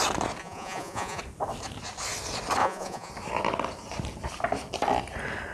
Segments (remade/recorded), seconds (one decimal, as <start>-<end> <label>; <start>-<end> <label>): 0.0-0.4 recorded; 0.4-1.2 remade; 1.2-2.6 recorded; 2.6-3.1 remade; 3.1-5.5 recorded